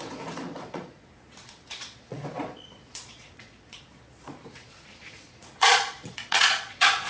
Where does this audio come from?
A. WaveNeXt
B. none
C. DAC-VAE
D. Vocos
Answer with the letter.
D